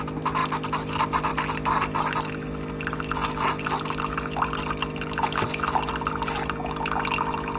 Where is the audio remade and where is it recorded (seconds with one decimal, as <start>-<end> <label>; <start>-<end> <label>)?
0.0-7.6 recorded